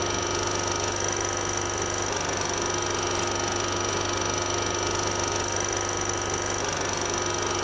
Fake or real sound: real